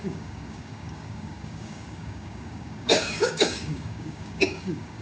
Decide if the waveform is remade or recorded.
remade